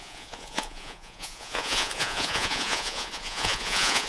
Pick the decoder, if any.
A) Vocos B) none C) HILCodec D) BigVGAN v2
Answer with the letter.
A